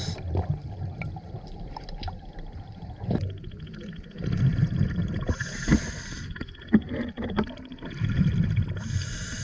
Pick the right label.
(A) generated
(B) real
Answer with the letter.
B